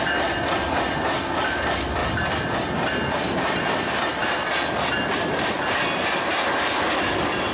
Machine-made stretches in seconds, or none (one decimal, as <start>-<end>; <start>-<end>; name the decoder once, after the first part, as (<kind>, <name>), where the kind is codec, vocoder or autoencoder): none